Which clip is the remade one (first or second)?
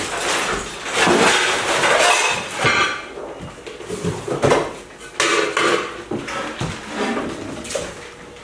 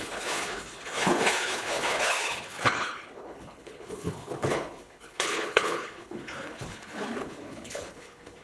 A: second